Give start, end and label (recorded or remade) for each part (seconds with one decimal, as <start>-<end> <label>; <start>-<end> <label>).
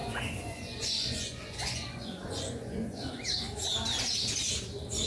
0.0-3.1 remade; 3.1-5.1 recorded